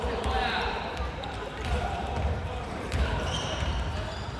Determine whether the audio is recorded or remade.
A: remade